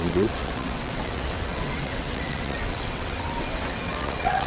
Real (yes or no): no